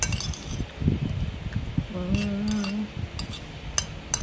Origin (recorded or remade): recorded